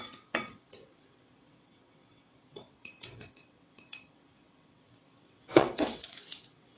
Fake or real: fake